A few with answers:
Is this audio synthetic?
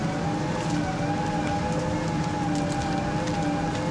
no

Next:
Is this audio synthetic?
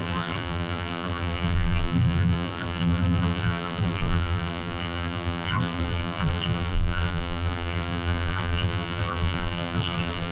yes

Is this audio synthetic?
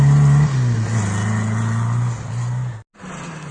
no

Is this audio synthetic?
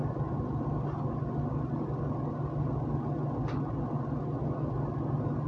no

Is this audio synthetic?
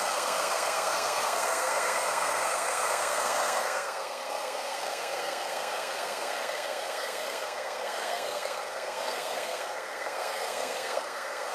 yes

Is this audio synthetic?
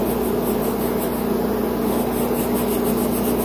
no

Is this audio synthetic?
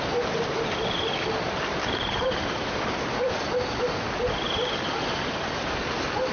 no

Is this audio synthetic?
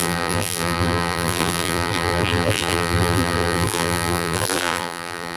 yes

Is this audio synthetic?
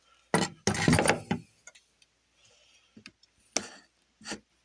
no